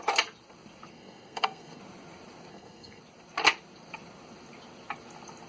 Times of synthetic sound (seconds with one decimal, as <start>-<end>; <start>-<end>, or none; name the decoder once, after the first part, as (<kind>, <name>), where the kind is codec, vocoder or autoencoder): 0.9-1.8 (codec, SNAC); 2.5-3.0